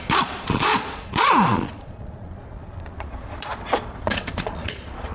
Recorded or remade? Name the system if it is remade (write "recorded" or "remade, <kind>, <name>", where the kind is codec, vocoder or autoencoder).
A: remade, vocoder, Vocos